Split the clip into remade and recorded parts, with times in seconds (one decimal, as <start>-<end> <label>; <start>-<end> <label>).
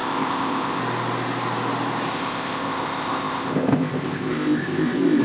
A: 0.0-0.8 remade; 0.8-2.1 recorded; 2.1-5.2 remade